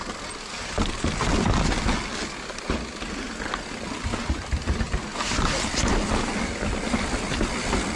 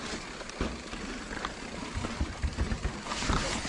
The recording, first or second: first